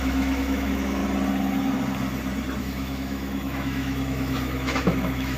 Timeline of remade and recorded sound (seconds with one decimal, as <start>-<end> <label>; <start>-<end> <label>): 0.0-1.0 remade; 1.0-2.6 recorded; 2.6-5.4 remade